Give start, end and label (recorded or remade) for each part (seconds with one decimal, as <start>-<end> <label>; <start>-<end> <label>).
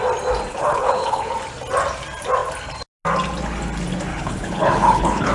0.0-0.5 recorded; 0.5-1.3 remade; 1.3-4.1 recorded; 4.1-5.3 remade